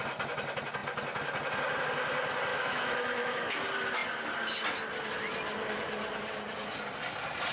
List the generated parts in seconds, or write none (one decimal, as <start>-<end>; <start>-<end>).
2.5-3.5

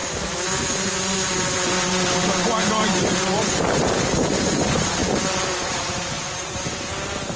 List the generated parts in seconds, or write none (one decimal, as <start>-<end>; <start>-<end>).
0.0-5.0; 5.6-7.4